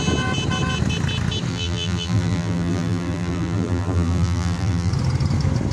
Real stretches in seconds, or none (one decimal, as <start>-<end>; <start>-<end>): 0.0-1.5; 4.9-5.7